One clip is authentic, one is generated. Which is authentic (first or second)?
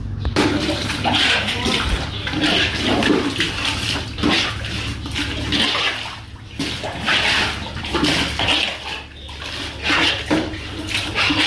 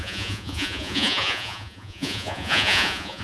first